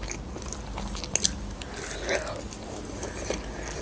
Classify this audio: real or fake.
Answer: real